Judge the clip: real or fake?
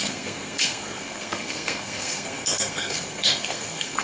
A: fake